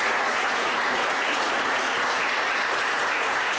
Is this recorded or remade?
remade